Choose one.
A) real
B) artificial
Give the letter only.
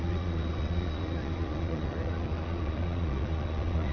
B